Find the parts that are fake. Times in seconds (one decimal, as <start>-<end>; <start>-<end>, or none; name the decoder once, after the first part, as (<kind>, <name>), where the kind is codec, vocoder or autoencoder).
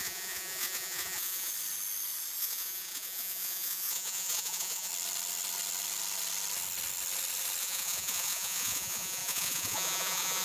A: 0.0-1.5 (vocoder, Vocos); 2.4-4.9; 7.6-10.4